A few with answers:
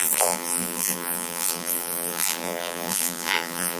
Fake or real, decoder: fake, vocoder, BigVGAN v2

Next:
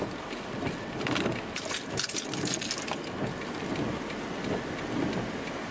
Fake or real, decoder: real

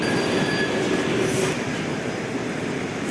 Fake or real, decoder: real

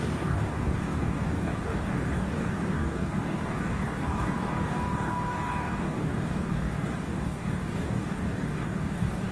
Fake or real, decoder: fake, codec, DAC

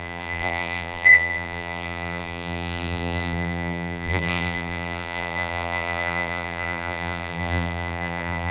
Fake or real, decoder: fake, vocoder, BigVGAN v2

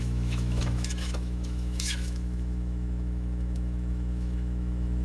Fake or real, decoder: fake, autoencoder, DAC-VAE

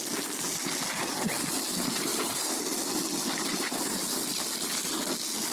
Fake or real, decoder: real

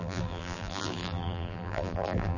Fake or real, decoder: fake, vocoder, BigVGAN v2